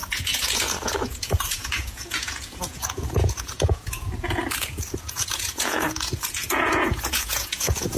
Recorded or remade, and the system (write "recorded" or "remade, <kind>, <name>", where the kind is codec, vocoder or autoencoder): remade, vocoder, Vocos